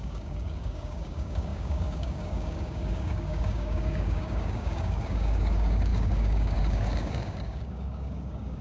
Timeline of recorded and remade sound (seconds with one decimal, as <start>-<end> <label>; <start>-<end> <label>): 0.0-8.6 remade